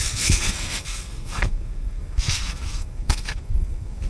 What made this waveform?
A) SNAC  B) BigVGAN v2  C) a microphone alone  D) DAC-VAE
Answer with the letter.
A